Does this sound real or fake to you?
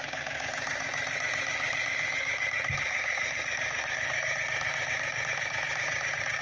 fake